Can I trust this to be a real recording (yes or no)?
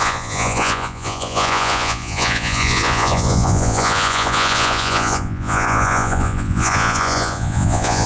no